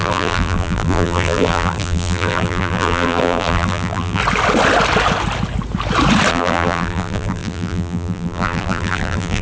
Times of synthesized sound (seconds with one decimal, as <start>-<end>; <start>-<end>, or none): 0.0-4.2; 6.3-9.4